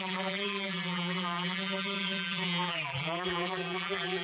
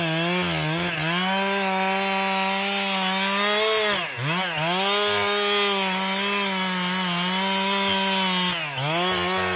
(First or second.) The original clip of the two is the second